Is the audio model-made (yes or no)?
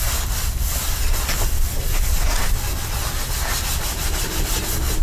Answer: no